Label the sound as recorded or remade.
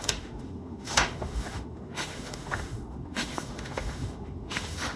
remade